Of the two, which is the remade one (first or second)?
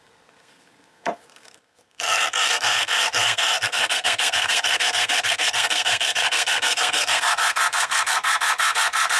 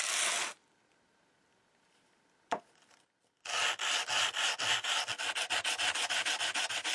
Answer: first